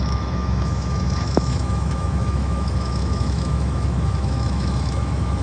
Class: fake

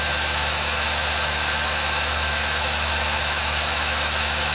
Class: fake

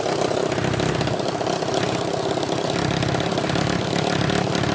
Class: real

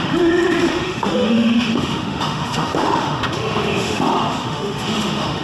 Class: fake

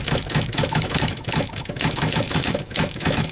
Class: fake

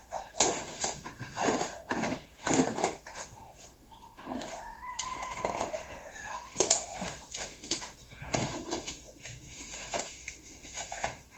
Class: fake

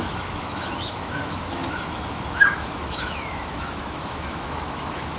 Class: fake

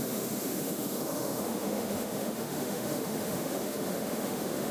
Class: fake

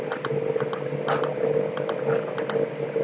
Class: real